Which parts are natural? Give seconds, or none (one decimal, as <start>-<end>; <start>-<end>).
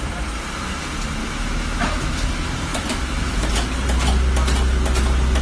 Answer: 0.0-1.2; 2.3-2.7; 3.5-5.4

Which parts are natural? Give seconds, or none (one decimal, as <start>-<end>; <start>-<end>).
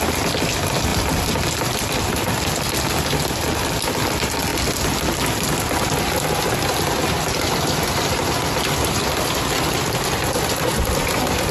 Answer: 0.0-11.5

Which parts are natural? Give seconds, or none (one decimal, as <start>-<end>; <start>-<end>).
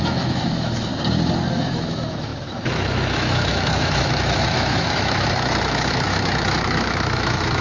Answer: 0.9-1.5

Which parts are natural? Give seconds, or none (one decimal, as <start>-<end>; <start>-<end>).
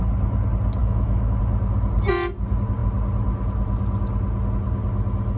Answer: 0.0-0.8; 1.4-5.4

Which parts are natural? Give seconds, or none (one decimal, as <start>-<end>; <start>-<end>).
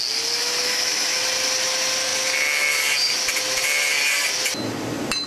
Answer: 0.0-0.4; 1.2-5.3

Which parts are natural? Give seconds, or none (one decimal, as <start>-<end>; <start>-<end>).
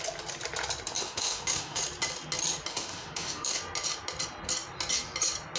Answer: 0.0-1.0; 1.8-2.7; 3.6-5.6